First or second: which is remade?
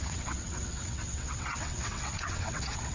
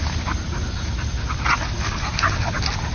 first